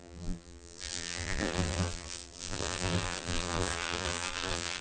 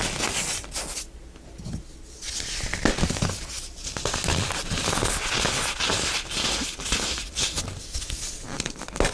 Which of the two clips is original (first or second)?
second